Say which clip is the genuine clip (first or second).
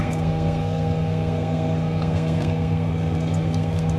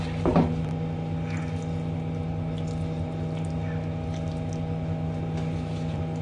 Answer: second